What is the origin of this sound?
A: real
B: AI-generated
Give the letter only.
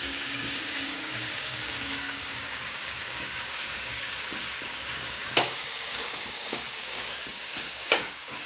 B